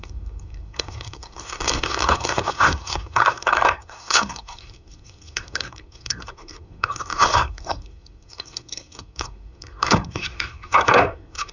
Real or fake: fake